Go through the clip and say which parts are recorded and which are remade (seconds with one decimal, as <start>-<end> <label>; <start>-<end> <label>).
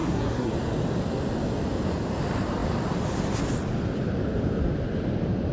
0.0-0.5 remade; 0.5-5.5 recorded